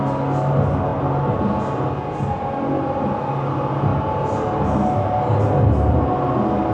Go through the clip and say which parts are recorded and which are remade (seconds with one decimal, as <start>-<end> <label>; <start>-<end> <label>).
0.0-6.7 recorded